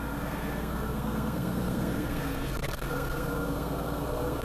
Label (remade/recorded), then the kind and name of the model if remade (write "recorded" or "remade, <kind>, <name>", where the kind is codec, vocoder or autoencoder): remade, codec, SNAC